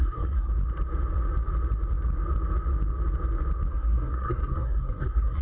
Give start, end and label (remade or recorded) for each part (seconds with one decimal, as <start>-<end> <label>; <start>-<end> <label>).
0.0-0.5 remade; 0.5-3.7 recorded; 3.7-5.4 remade